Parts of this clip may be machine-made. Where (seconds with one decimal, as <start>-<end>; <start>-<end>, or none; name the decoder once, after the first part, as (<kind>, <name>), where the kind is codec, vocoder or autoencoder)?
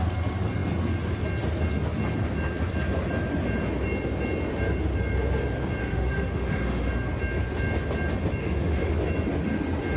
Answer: 5.8-6.9 (autoencoder, DAC-VAE); 8.4-9.0